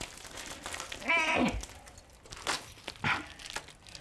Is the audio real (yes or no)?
yes